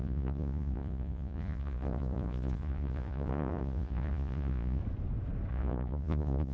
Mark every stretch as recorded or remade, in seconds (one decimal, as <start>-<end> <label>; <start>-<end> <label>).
0.0-4.8 remade; 4.8-5.5 recorded; 5.5-6.5 remade